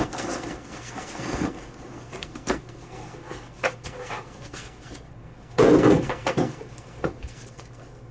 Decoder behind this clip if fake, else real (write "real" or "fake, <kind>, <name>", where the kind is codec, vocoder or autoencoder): fake, codec, SNAC